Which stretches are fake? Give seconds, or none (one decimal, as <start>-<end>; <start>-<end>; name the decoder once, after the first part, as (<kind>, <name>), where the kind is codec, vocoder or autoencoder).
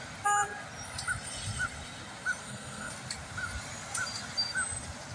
2.4-2.9 (codec, SNAC)